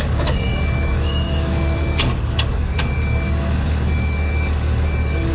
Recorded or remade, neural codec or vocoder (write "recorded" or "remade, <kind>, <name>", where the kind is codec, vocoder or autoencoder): remade, codec, DAC